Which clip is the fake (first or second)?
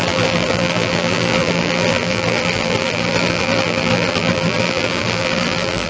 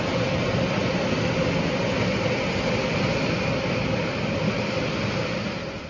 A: first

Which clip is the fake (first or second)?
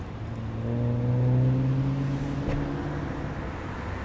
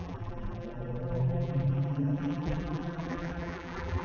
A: second